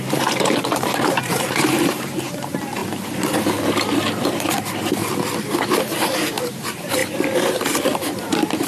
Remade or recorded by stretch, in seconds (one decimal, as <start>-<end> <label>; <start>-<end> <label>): 0.0-2.8 remade; 2.8-3.6 recorded; 3.6-5.0 remade; 5.0-6.5 recorded; 6.5-7.0 remade; 7.0-7.8 recorded; 7.8-8.7 remade